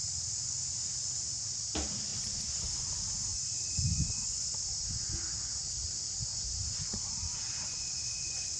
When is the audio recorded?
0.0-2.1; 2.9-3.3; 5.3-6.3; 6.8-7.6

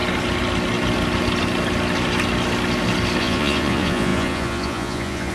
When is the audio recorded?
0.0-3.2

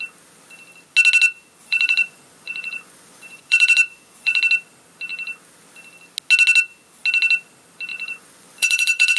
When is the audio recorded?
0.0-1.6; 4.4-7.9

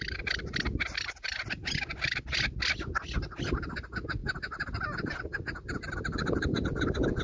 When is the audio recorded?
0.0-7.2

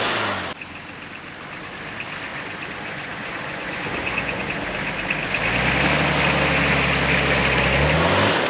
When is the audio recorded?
0.0-2.3; 4.5-8.5

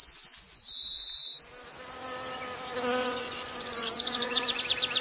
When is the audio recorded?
1.0-3.0; 4.6-5.0

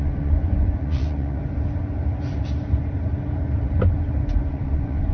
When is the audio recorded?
1.4-4.5